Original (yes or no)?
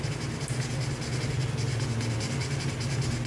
yes